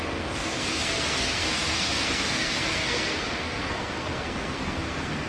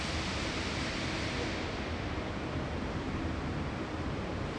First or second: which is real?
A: second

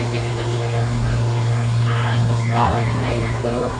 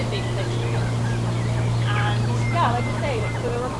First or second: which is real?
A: second